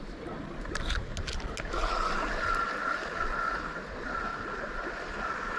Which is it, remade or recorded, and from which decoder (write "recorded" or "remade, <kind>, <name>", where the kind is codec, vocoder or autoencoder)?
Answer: recorded